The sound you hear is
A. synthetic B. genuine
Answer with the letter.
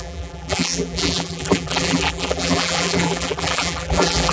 A